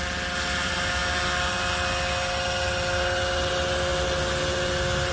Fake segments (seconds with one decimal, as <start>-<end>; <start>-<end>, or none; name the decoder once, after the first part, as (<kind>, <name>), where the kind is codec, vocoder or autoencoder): none

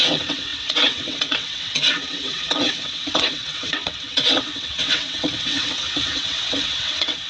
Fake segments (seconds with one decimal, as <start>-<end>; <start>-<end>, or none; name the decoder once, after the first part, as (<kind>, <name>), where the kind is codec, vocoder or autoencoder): 0.0-7.3 (vocoder, WaveNeXt)

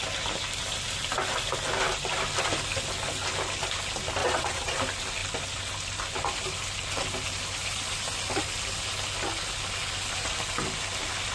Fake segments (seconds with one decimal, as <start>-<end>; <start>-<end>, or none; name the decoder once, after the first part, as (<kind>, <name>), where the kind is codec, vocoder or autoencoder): 4.2-4.8 (vocoder, WaveNeXt)

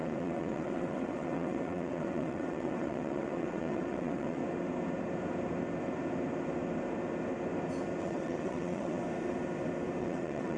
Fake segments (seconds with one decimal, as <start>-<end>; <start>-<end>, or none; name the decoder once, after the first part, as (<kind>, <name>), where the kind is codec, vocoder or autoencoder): 0.0-4.4 (vocoder, WaveNeXt); 8.0-9.0; 10.0-10.6

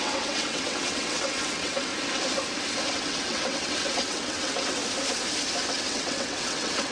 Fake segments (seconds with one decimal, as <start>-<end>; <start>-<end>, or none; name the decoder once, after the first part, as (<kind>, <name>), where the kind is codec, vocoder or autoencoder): 0.0-1.9 (vocoder, WaveNeXt); 2.9-4.8; 5.7-6.9